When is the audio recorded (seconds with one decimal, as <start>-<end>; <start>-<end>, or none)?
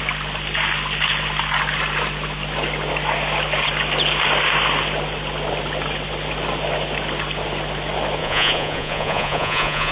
0.0-8.2